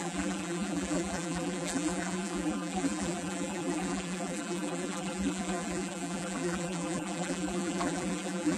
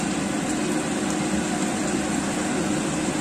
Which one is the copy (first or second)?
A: first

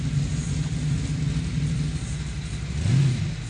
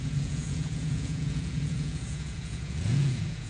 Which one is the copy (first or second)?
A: second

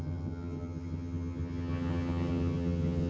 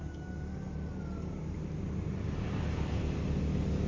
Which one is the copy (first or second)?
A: first